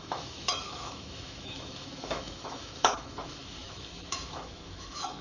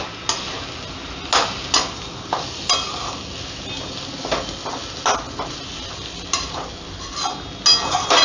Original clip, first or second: second